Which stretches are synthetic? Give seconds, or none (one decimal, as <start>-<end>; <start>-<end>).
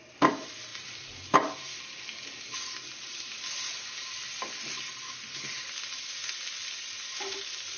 none